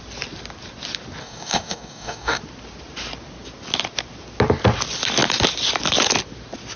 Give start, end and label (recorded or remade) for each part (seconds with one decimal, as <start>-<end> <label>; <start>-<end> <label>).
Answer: 0.0-1.2 recorded; 1.2-2.4 remade; 2.4-6.8 recorded